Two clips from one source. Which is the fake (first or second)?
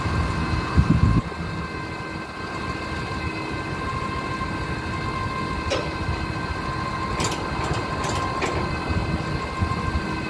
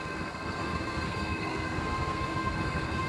second